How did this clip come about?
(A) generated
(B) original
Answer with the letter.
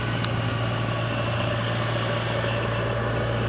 B